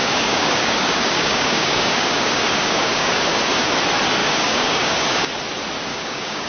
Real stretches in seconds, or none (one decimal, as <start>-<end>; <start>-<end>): 3.7-4.2; 5.3-5.9